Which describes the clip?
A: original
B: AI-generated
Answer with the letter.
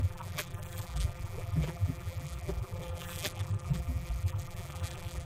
B